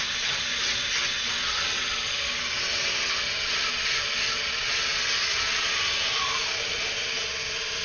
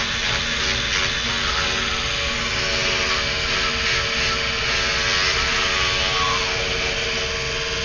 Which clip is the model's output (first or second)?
first